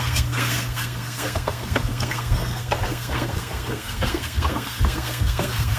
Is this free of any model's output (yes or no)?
no